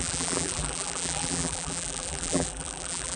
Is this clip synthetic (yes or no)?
yes